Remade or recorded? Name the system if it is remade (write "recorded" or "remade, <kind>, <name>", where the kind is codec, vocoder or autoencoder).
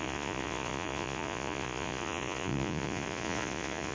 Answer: remade, vocoder, Vocos